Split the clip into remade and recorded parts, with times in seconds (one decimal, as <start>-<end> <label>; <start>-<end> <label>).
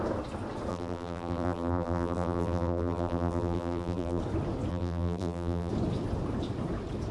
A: 0.0-0.7 recorded; 0.7-4.2 remade; 4.2-4.7 recorded; 4.7-5.7 remade; 5.7-7.1 recorded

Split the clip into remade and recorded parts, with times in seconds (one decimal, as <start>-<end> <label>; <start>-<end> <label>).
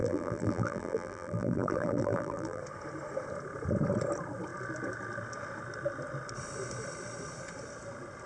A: 0.0-2.6 remade; 2.6-8.3 recorded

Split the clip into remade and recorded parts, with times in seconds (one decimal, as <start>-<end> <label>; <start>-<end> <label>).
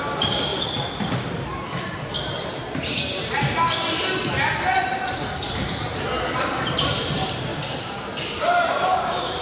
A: 0.0-0.5 remade; 0.5-4.8 recorded; 4.8-7.5 remade; 7.5-8.4 recorded; 8.4-9.4 remade